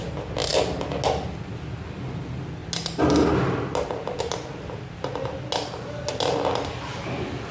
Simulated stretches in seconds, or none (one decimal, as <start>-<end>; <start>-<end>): none